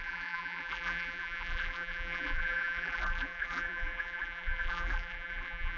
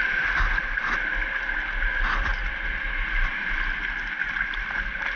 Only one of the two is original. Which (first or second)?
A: second